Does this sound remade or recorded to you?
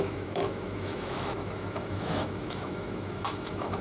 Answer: remade